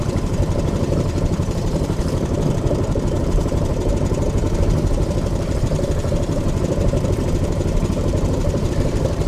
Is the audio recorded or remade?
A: remade